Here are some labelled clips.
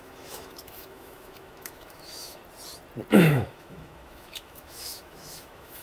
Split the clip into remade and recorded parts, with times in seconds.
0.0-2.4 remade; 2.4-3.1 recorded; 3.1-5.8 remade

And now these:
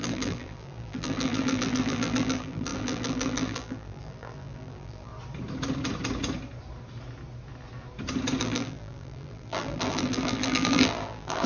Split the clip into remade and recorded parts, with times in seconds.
0.0-5.1 remade; 5.1-8.4 recorded; 8.4-11.5 remade